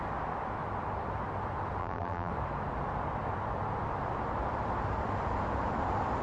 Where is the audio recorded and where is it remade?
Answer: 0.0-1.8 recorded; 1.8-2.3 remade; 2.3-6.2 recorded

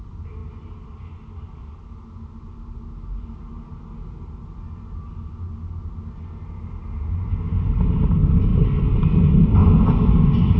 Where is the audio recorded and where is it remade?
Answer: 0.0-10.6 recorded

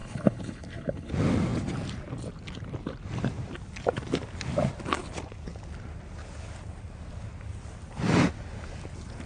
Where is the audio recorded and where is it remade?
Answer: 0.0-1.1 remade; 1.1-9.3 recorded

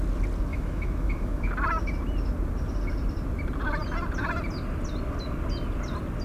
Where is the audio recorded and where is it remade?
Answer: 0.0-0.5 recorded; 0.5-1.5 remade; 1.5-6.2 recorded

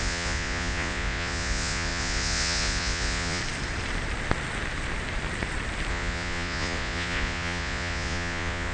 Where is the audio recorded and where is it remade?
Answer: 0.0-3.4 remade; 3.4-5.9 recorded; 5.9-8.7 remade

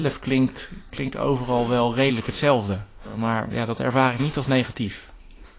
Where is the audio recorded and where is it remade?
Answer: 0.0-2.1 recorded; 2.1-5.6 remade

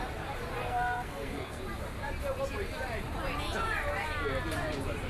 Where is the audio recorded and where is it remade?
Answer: 0.0-0.6 recorded; 0.6-1.6 remade; 1.6-5.1 recorded

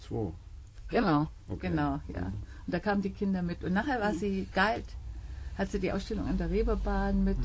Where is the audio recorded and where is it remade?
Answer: 0.0-0.7 recorded; 0.7-1.4 remade; 1.4-7.4 recorded